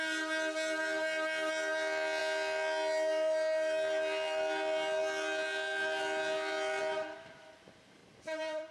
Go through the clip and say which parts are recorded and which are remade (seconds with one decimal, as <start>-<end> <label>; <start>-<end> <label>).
0.0-8.0 recorded; 8.0-8.7 remade